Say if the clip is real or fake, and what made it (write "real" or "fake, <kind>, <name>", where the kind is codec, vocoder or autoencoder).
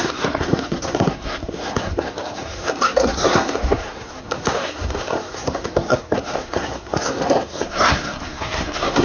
fake, codec, SNAC